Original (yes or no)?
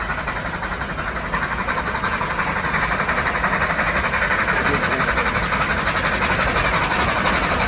yes